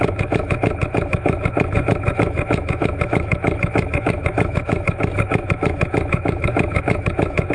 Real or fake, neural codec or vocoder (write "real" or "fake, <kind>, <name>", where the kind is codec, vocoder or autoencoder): fake, autoencoder, DAC-VAE